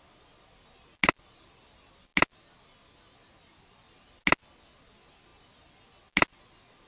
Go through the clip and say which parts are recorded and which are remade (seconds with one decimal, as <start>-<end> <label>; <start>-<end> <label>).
0.0-6.9 recorded